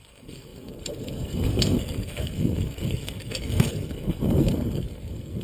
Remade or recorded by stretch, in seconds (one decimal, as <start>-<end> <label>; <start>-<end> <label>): 0.0-5.4 remade